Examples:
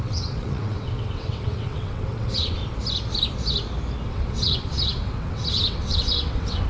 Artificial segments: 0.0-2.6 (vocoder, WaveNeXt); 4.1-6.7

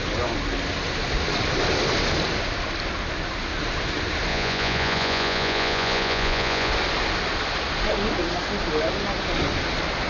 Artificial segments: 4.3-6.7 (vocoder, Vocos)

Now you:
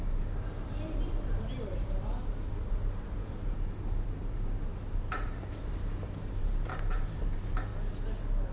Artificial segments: 0.0-7.7 (vocoder, BigVGAN v2)